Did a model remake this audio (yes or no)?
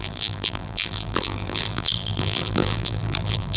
yes